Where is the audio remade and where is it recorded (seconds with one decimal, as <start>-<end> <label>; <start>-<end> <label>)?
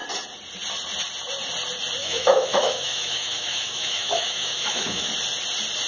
0.0-2.0 recorded; 2.0-5.1 remade; 5.1-5.9 recorded